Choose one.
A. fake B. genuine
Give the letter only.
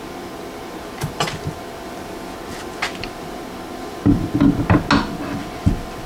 B